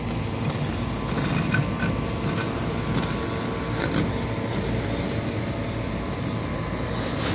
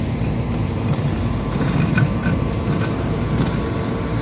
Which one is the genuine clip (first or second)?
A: first